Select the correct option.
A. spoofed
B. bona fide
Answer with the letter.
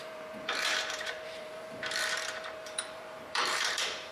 A